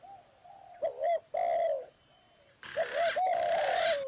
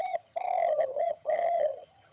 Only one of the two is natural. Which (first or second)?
first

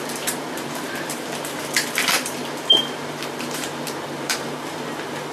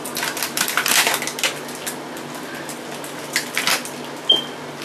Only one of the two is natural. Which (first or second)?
second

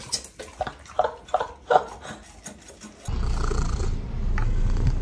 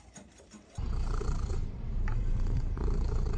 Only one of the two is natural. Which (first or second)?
first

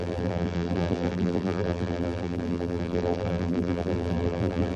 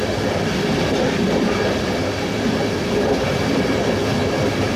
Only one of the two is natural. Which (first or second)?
second